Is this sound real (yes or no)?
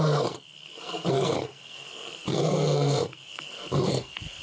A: no